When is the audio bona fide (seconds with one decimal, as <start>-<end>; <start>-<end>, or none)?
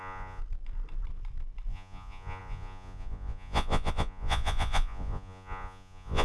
0.4-1.7